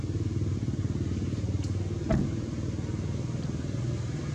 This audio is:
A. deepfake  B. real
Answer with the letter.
B